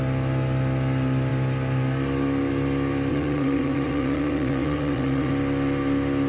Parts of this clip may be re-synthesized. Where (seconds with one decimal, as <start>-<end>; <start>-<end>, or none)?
3.1-5.3